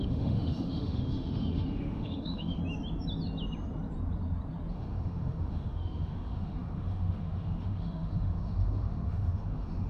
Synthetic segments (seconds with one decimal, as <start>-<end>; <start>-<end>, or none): 0.0-2.6; 4.7-9.9